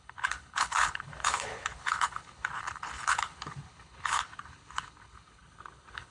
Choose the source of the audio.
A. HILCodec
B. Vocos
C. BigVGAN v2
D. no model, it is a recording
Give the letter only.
A